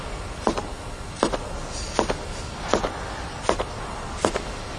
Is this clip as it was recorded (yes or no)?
yes